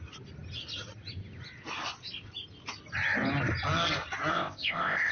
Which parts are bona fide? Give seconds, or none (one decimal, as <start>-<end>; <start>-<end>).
0.0-4.3